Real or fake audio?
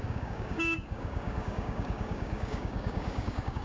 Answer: fake